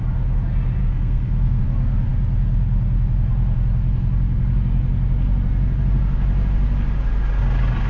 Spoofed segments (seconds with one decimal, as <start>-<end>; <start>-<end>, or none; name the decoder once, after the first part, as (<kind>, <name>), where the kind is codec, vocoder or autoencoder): 0.8-1.6 (codec, SNAC)